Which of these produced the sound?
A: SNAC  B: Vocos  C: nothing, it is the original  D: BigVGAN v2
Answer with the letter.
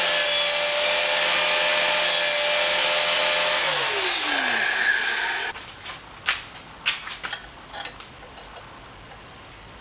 C